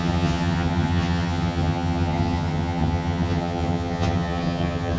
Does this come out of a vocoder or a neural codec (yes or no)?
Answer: yes